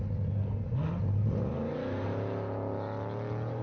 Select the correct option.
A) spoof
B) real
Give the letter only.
B